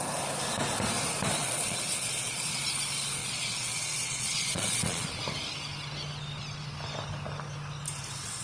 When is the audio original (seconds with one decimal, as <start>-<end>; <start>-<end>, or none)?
0.0-1.4; 2.6-3.2; 5.2-8.4